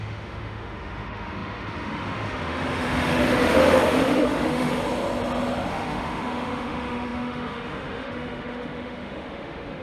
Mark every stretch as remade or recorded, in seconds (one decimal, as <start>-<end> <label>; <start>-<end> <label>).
0.0-4.7 remade; 4.7-5.7 recorded; 5.7-9.8 remade

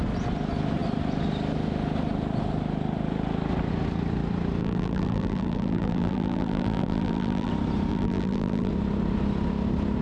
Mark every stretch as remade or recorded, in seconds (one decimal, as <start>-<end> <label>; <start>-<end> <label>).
0.0-4.6 recorded; 4.6-7.5 remade; 7.5-7.9 recorded; 7.9-8.7 remade; 8.7-10.0 recorded